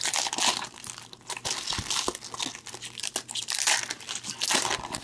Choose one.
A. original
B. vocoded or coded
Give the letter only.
A